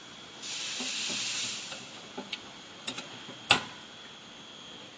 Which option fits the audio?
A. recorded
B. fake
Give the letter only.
A